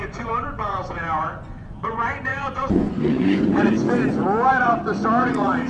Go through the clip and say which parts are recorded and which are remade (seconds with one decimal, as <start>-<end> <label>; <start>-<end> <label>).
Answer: 0.0-5.7 remade